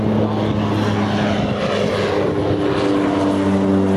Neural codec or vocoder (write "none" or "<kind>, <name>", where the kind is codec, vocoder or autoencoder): none